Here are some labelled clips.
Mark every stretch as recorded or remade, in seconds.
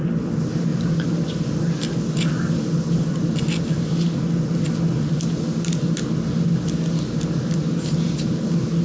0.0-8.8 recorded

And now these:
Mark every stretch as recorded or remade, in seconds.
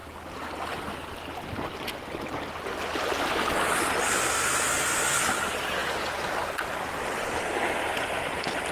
0.0-8.7 recorded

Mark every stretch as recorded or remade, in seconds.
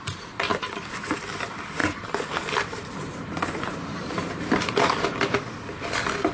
0.0-1.8 recorded; 1.8-4.9 remade; 4.9-6.3 recorded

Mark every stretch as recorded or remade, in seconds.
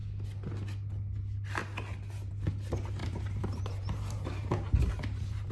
0.0-3.0 recorded; 3.0-5.5 remade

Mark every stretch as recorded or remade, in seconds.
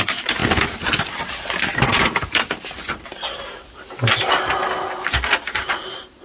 0.0-6.2 recorded